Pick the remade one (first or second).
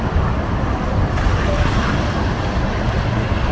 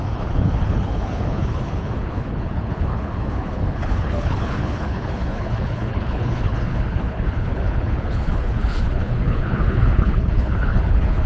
second